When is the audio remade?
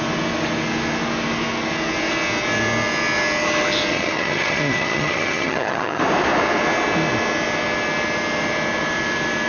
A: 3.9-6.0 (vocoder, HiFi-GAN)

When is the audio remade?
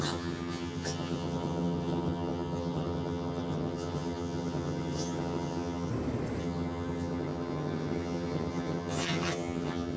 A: 0.0-5.9 (vocoder, HiFi-GAN); 6.4-10.0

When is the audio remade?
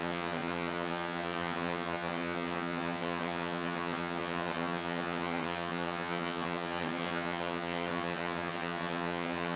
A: 0.0-9.6 (vocoder, HiFi-GAN)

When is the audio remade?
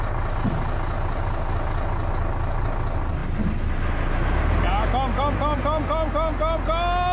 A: none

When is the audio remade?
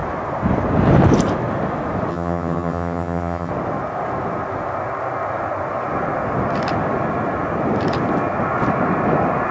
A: 2.1-3.5 (vocoder, HiFi-GAN)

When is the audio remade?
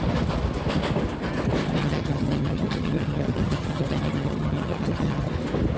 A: 1.8-5.3 (vocoder, HiFi-GAN)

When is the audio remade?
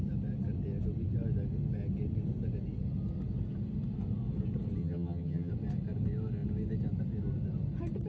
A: 4.8-5.5 (vocoder, HiFi-GAN)